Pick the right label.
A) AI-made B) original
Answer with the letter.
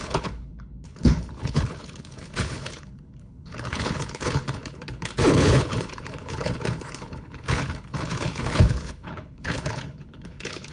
A